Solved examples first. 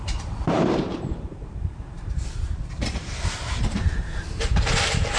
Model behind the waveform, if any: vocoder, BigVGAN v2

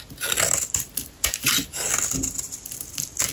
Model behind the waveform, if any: none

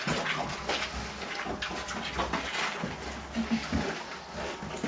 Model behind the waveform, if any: none